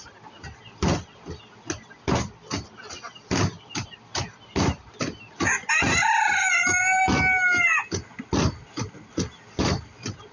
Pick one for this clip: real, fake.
real